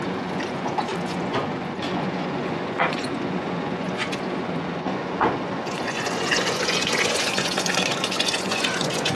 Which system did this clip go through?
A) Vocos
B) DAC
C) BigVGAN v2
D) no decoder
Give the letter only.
A